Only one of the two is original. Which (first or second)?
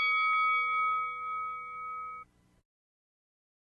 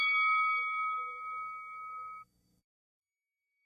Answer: first